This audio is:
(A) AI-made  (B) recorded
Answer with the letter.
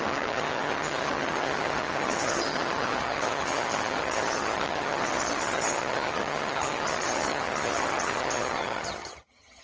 A